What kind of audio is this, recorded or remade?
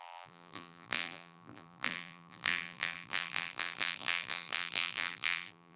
remade